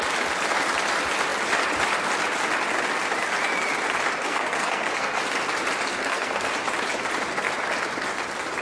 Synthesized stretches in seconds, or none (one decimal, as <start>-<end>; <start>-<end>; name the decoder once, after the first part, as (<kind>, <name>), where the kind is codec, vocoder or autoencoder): 4.2-5.2 (codec, SNAC); 5.9-6.5